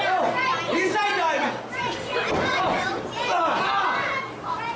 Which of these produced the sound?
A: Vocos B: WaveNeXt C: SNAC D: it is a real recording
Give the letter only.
D